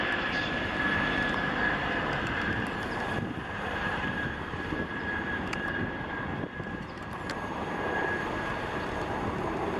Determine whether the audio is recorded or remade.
remade